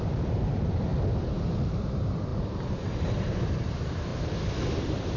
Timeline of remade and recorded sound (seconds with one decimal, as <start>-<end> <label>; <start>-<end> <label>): 0.0-0.9 remade; 0.9-1.7 recorded; 1.7-4.1 remade; 4.1-4.8 recorded; 4.8-5.2 remade